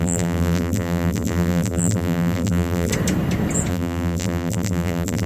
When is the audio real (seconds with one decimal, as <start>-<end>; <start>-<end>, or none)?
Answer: 2.9-3.7